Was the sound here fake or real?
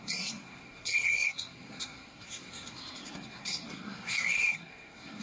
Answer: fake